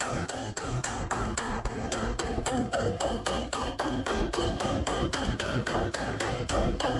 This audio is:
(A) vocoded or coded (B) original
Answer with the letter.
A